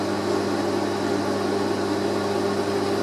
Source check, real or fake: real